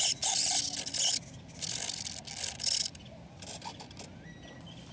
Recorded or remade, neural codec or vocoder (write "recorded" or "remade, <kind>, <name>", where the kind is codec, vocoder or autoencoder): recorded